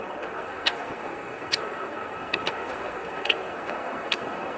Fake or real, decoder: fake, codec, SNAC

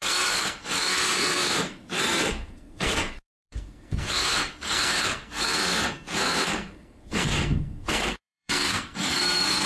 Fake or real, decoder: fake, codec, SNAC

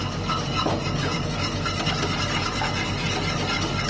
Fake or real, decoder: real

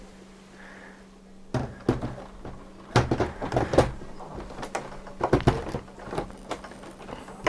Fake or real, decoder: real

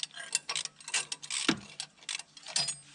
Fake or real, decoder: real